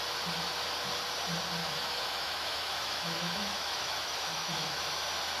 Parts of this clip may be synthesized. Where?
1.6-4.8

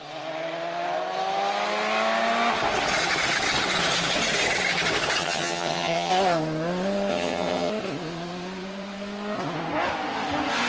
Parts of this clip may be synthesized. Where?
5.2-6.1; 7.1-7.7

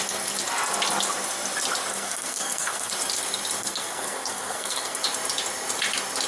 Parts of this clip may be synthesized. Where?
1.9-2.9; 3.6-5.0

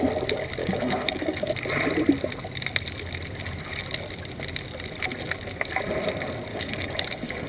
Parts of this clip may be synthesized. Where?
0.6-1.5; 6.5-7.5

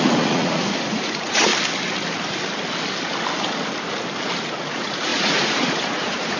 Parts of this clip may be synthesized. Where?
0.0-1.5; 4.4-6.4

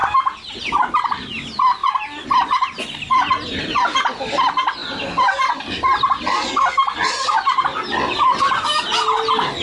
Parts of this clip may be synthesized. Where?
0.0-0.6; 1.8-4.3

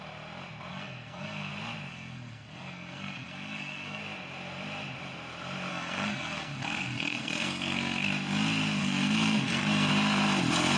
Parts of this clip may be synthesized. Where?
0.7-1.5; 1.9-4.0; 5.7-8.1; 8.8-9.9